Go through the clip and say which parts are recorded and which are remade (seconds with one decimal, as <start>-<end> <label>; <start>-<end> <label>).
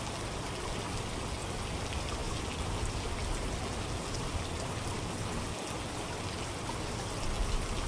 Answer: 0.0-7.9 recorded